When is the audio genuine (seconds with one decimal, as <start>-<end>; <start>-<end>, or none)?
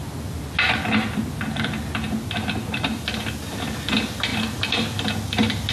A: 0.0-4.3; 5.1-5.7